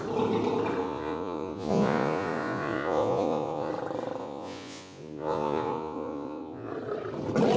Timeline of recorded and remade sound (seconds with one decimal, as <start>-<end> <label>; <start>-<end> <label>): 0.0-0.8 recorded; 0.8-3.7 remade; 3.7-4.2 recorded; 4.2-6.7 remade; 6.7-7.6 recorded